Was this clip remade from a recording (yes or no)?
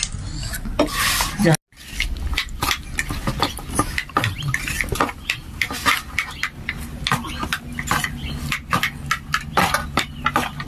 no